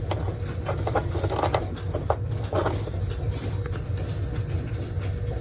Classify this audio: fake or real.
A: real